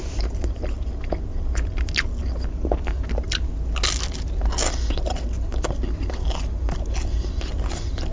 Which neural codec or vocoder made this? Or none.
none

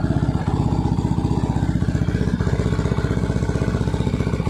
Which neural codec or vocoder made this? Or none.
none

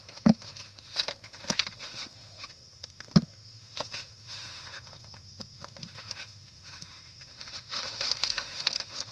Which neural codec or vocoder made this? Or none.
autoencoder, DAC-VAE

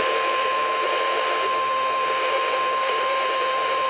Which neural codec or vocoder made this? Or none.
autoencoder, DAC-VAE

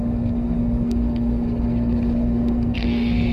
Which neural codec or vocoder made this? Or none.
codec, SNAC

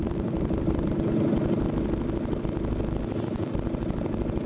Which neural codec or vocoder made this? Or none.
none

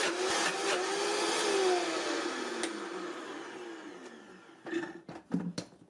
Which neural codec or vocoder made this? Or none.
none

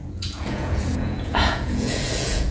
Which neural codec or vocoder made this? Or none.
vocoder, Vocos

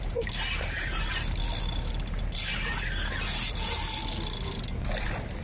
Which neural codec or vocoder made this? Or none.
none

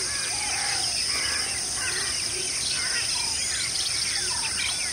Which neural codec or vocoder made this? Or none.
none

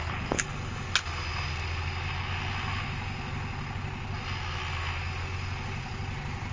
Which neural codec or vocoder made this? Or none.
none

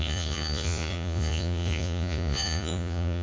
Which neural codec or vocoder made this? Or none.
vocoder, Vocos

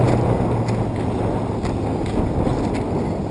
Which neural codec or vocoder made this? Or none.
none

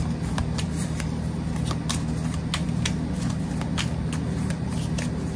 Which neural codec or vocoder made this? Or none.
none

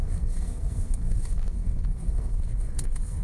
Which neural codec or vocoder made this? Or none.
codec, SNAC